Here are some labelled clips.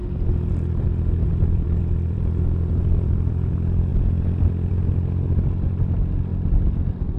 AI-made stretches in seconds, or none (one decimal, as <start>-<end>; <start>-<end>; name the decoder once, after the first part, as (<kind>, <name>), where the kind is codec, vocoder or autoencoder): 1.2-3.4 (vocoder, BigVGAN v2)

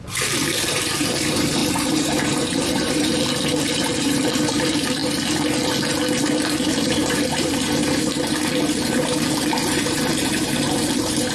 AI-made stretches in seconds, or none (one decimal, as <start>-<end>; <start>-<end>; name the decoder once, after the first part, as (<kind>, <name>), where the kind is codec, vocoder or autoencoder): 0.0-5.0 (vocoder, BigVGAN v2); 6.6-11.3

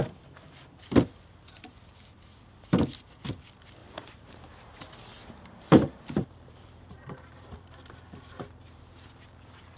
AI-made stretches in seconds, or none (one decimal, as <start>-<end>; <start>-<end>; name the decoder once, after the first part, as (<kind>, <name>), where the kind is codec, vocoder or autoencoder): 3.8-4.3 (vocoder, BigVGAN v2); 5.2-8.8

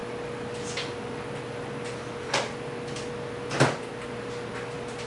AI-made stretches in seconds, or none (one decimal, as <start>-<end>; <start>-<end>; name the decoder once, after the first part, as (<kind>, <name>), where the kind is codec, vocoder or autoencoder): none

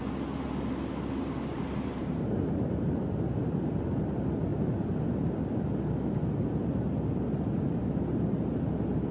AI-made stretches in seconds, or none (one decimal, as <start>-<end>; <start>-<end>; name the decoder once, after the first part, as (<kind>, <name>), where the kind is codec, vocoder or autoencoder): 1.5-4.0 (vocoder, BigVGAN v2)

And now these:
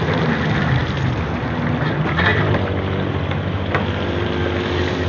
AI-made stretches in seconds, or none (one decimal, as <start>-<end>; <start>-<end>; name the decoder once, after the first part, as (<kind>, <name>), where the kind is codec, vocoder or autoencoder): 0.8-1.4 (vocoder, BigVGAN v2); 2.3-3.1

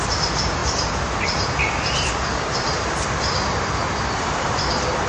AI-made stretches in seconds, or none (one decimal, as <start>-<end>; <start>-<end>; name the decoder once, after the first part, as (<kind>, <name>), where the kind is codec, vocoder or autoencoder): 0.0-5.1 (vocoder, BigVGAN v2)

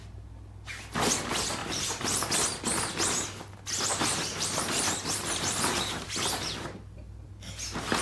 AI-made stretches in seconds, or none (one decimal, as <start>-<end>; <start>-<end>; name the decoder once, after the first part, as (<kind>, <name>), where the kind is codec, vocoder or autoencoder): 1.6-2.3 (vocoder, BigVGAN v2); 3.9-6.1